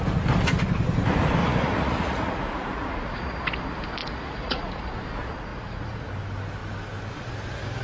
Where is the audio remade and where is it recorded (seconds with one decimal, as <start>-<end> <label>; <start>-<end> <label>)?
0.0-1.4 recorded; 1.4-3.4 remade; 3.4-4.0 recorded; 4.0-4.9 remade; 4.9-5.5 recorded; 5.5-6.1 remade; 6.1-7.8 recorded